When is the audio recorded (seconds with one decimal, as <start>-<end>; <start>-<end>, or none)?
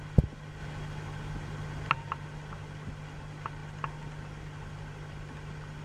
0.0-5.8